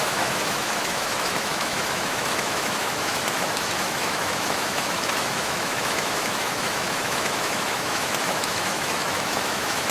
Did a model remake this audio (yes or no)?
yes